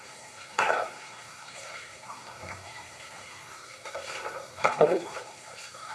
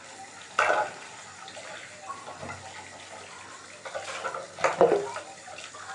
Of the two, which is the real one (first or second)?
second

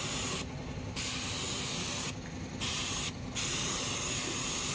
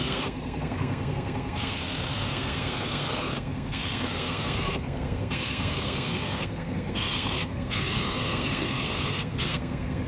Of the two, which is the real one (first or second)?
first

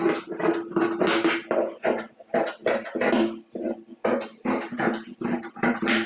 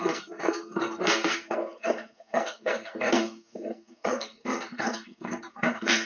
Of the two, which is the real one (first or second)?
first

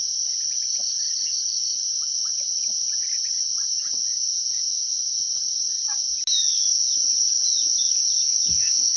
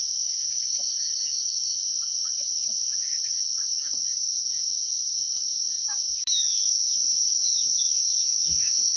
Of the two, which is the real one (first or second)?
first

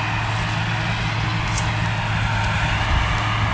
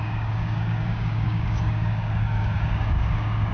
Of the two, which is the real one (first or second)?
first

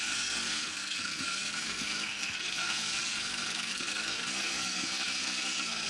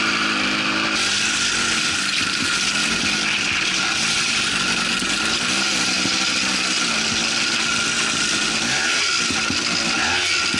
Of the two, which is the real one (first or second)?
second